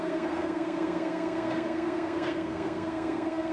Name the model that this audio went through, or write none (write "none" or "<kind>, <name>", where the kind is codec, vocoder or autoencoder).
codec, SNAC